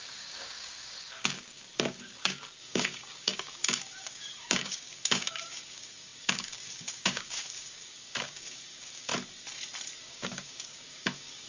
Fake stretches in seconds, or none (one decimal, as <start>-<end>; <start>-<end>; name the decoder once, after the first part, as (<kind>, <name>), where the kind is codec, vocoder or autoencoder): 0.0-9.1 (codec, DAC); 10.0-11.5

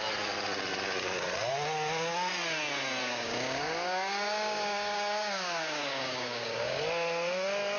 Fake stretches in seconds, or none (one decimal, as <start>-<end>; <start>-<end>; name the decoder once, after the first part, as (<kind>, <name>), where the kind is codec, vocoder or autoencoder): 3.0-6.8 (codec, DAC)